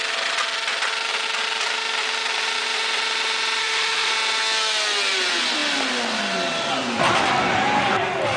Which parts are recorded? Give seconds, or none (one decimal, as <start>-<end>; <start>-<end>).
0.0-3.6; 4.1-8.4